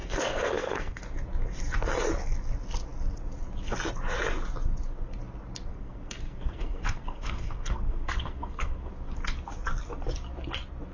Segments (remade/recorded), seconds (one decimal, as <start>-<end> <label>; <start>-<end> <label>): 0.0-1.0 remade; 1.0-5.7 recorded; 5.7-8.9 remade; 8.9-10.9 recorded